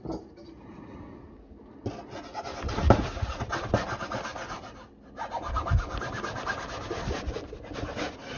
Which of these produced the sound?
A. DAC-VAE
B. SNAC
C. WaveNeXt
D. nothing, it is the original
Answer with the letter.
D